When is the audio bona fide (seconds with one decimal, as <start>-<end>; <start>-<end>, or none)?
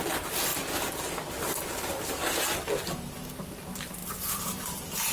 0.5-1.3; 2.2-2.7